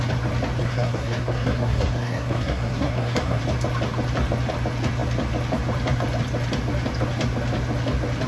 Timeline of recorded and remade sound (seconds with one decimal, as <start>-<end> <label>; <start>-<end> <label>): 0.0-0.6 recorded; 0.6-3.4 remade; 3.4-8.3 recorded